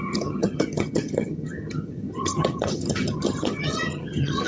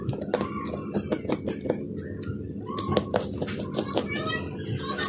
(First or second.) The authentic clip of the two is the second